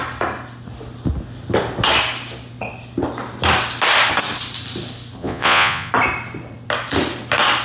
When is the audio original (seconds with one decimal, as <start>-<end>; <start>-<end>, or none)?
0.0-5.2; 5.9-7.6